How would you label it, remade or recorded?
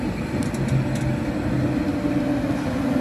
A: recorded